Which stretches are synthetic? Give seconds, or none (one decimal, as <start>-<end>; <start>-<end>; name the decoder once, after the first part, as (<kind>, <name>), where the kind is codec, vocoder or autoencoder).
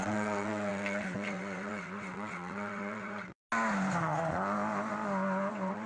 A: 0.0-3.4 (vocoder, WaveNeXt); 5.5-5.9